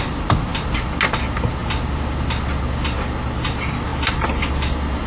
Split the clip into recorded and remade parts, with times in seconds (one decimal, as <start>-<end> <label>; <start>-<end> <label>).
0.0-5.1 recorded